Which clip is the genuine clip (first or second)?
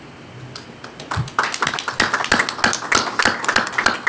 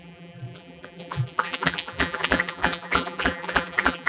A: first